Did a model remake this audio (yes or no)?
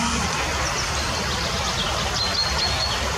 no